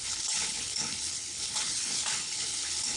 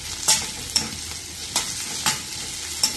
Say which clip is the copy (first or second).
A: first